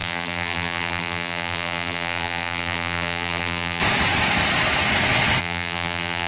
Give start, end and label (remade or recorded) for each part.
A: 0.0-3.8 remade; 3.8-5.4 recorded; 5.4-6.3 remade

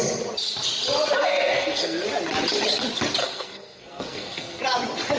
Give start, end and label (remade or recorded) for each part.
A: 0.0-1.2 recorded; 1.2-2.0 remade; 2.0-3.2 recorded; 3.2-4.6 remade; 4.6-5.2 recorded

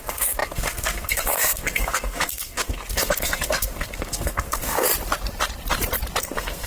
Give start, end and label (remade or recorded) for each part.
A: 0.0-4.9 remade; 4.9-6.2 recorded; 6.2-6.7 remade

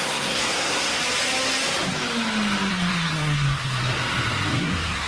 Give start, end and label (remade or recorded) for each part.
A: 0.0-1.0 remade; 1.0-2.7 recorded; 2.7-4.0 remade; 4.0-4.5 recorded; 4.5-5.1 remade

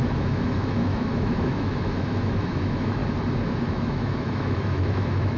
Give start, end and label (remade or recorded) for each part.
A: 0.0-3.0 remade; 3.0-3.7 recorded; 3.7-5.4 remade

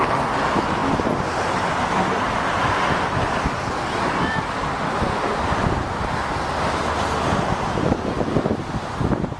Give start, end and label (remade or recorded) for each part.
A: 0.0-9.4 recorded

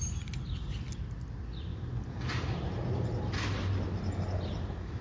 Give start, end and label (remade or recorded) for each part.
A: 0.0-5.0 recorded